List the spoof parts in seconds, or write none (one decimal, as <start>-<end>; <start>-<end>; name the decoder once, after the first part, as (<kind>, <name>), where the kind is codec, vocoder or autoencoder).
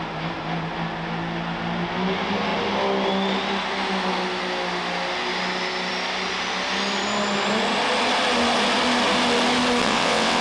9.8-10.4 (vocoder, WaveNeXt)